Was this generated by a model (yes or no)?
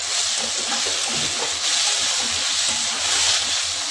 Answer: no